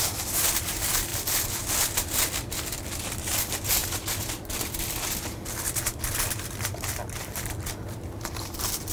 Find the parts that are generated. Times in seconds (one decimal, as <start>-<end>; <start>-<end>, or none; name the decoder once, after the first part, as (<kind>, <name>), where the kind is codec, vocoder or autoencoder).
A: 0.0-8.9 (vocoder, BigVGAN v2)